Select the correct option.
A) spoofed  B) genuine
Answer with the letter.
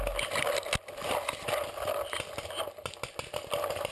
B